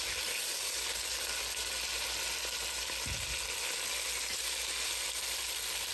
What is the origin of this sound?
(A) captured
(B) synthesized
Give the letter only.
A